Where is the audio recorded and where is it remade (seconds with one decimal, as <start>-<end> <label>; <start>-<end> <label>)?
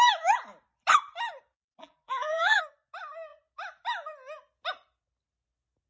0.0-1.7 recorded; 1.7-2.6 remade; 2.6-5.9 recorded